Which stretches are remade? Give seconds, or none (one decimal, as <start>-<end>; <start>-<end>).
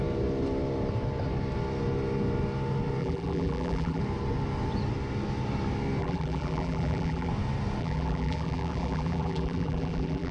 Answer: 3.0-4.0; 6.0-7.3; 7.8-10.3